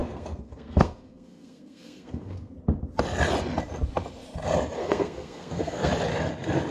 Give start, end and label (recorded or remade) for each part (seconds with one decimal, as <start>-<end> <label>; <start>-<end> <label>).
0.0-2.5 remade; 2.5-4.8 recorded; 4.8-5.9 remade; 5.9-6.7 recorded